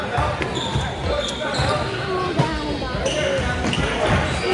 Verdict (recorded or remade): recorded